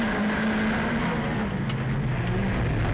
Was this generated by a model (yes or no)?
no